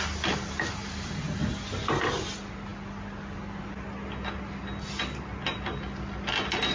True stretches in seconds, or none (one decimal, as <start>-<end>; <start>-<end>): 0.0-6.7